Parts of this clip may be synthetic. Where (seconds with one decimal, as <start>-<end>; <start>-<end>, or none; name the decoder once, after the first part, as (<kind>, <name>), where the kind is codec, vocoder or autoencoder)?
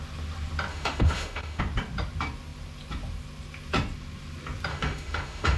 0.7-1.6 (autoencoder, DAC-VAE); 4.7-5.6